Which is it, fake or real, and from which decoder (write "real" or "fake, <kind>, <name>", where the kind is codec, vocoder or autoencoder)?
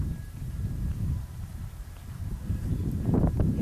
fake, vocoder, BigVGAN v2